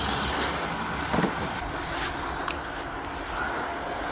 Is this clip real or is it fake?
real